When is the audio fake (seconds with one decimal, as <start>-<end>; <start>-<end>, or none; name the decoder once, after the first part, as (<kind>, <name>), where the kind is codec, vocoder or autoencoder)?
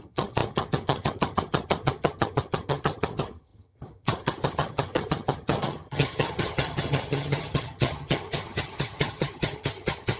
0.0-10.2 (vocoder, HiFi-GAN)